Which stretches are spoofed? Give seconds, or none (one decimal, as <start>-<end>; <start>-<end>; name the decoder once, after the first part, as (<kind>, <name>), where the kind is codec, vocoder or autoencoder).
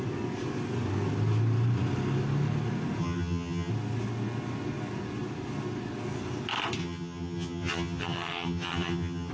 3.0-3.7 (vocoder, HiFi-GAN); 6.8-9.3